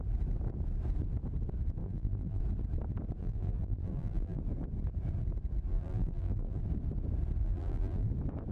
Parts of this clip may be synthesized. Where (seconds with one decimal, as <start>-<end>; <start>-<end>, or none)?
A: 1.8-2.4; 3.2-4.4; 5.7-6.6; 7.4-8.1